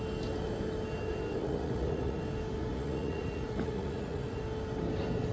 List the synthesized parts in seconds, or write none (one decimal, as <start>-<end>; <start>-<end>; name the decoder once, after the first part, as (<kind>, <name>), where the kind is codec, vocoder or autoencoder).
1.4-2.2 (vocoder, Vocos); 2.7-4.4